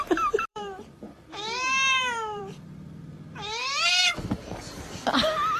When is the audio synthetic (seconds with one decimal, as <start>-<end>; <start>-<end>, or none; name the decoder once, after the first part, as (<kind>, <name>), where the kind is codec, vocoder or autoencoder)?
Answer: 0.5-3.9 (vocoder, BigVGAN v2)